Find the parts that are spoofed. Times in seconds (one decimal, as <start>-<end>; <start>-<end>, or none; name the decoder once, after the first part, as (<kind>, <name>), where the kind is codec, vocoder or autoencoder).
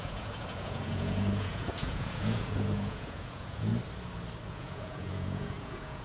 0.0-3.7 (vocoder, Vocos); 4.5-6.0